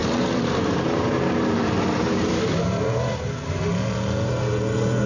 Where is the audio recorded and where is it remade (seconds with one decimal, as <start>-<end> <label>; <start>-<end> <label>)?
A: 0.0-3.1 remade; 3.1-5.1 recorded